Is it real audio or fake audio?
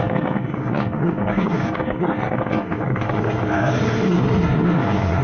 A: fake